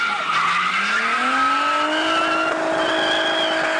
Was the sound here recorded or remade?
recorded